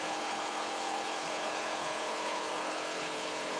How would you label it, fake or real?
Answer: fake